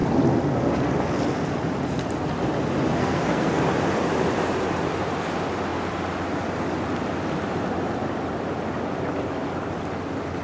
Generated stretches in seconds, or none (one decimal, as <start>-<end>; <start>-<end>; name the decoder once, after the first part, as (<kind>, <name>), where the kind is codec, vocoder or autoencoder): 3.0-3.6 (codec, SNAC)